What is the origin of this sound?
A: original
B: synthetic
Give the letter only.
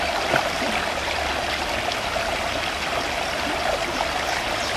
A